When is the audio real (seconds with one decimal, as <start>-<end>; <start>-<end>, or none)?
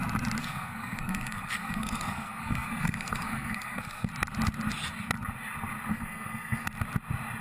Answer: 0.0-0.4; 4.1-5.9; 6.7-7.4